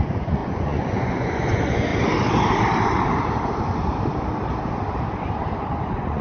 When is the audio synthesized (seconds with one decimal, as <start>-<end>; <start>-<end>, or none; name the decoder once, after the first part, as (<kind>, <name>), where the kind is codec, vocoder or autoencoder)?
0.0-1.9 (vocoder, Vocos); 5.6-6.2